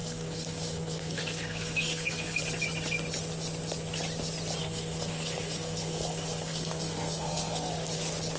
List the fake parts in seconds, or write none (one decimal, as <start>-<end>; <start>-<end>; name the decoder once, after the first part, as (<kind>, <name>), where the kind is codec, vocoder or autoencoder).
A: 0.0-2.4 (codec, SNAC); 4.6-7.7